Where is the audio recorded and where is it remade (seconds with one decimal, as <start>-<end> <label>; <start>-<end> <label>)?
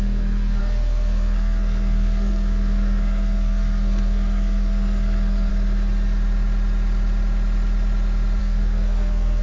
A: 0.0-5.5 remade; 5.5-8.4 recorded; 8.4-9.4 remade